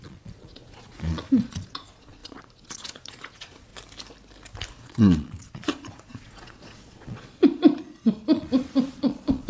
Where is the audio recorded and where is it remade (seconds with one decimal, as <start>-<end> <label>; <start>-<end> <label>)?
0.0-3.7 remade; 3.7-4.8 recorded; 4.8-9.5 remade